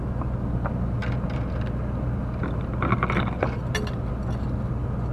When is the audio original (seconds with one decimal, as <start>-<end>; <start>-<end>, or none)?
0.0-5.1